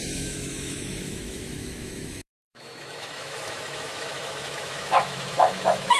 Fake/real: fake